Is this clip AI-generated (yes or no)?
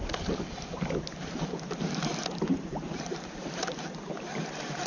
no